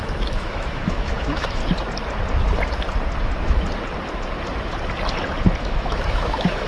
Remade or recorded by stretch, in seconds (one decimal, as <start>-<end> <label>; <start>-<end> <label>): 0.0-1.6 remade; 1.6-5.6 recorded; 5.6-6.7 remade